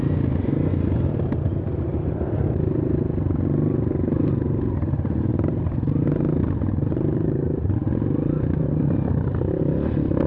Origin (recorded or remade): recorded